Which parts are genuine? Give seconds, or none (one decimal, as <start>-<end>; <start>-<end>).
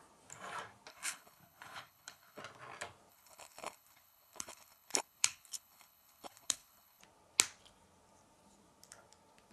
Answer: 0.0-0.9; 2.4-3.1; 7.0-9.5